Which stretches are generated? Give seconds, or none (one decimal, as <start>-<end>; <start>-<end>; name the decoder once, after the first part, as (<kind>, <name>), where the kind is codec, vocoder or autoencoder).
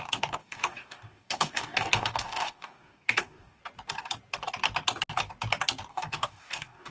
0.0-3.6 (codec, DAC); 5.9-6.9